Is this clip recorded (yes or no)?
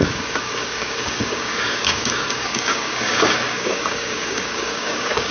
no